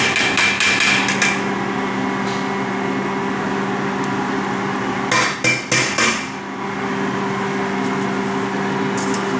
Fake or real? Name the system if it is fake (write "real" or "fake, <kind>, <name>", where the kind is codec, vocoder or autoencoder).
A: real